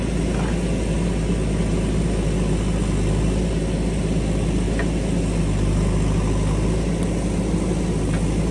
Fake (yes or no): no